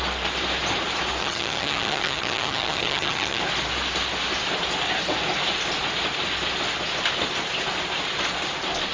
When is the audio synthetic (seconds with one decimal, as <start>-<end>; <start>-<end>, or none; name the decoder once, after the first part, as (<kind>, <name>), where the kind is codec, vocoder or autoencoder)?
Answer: 1.2-3.4 (vocoder, HiFi-GAN)